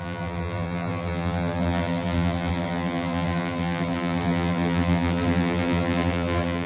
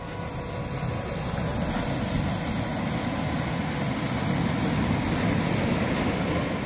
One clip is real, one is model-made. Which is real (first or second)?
second